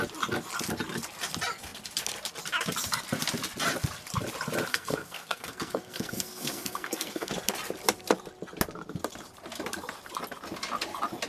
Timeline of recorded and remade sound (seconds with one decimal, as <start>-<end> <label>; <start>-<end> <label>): 0.0-4.7 recorded; 4.7-7.3 remade; 7.3-11.3 recorded